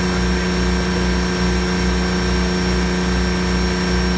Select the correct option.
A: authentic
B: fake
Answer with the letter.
A